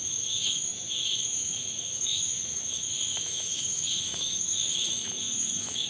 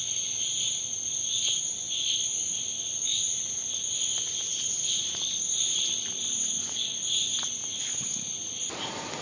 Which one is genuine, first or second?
second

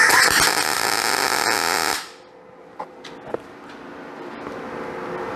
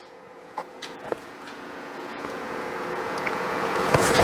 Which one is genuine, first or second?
first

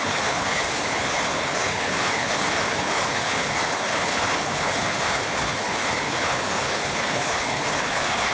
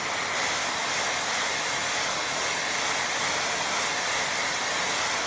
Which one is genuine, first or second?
second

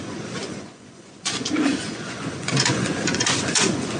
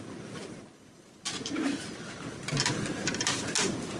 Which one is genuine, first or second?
second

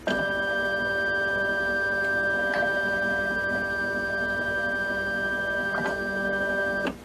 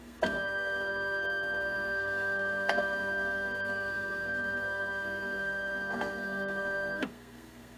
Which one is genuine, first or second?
first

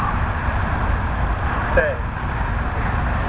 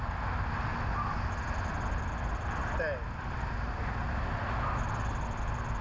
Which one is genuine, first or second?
second